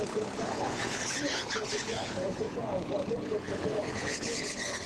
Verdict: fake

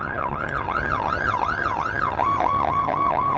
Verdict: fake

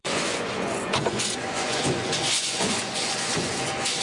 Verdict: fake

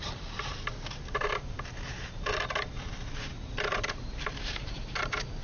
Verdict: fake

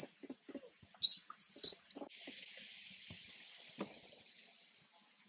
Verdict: real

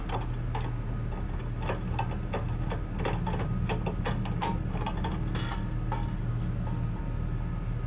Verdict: real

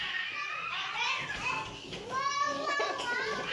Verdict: real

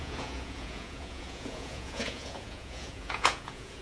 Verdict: fake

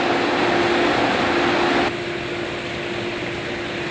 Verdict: real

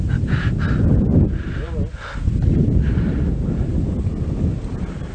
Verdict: real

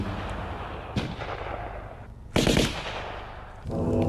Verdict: real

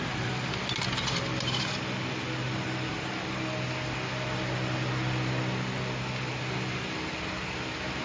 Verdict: real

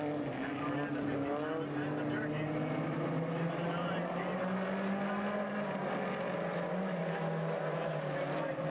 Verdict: real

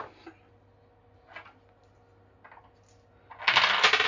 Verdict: real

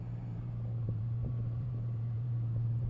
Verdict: fake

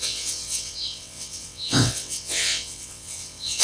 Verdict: fake